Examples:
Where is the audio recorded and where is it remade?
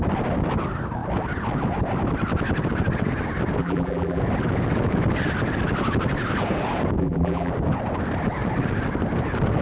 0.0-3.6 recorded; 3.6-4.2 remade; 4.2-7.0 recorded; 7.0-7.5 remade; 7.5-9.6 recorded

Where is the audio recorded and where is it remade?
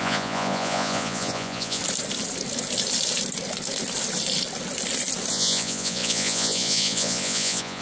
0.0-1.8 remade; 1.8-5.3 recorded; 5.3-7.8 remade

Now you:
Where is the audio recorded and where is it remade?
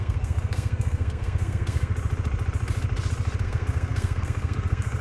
0.0-1.9 remade; 1.9-3.4 recorded; 3.4-5.0 remade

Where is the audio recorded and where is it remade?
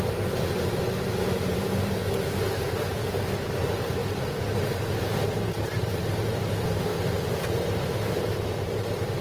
0.0-4.0 remade; 4.0-5.2 recorded; 5.2-6.9 remade; 6.9-8.2 recorded; 8.2-9.2 remade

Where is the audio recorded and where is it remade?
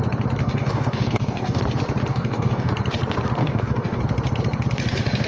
0.0-0.4 recorded; 0.4-1.6 remade; 1.6-2.1 recorded; 2.1-2.7 remade; 2.7-3.4 recorded; 3.4-4.0 remade; 4.0-5.3 recorded